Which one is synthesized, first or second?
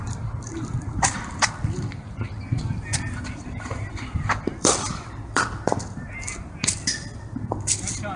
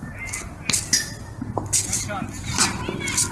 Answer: first